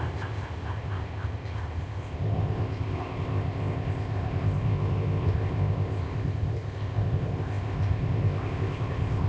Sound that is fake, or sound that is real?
fake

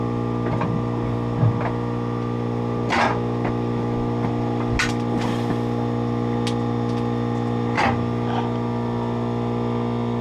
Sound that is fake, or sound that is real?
real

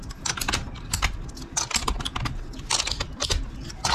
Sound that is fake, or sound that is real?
real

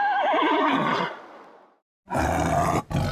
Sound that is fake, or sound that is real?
real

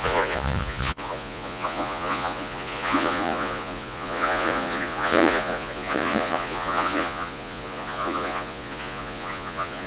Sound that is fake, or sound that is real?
fake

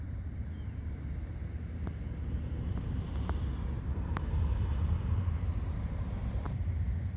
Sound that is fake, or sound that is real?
fake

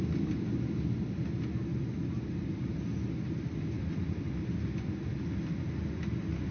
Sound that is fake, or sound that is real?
real